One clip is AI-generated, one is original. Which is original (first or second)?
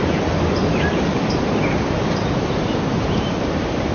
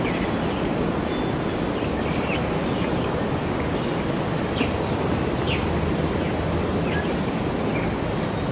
second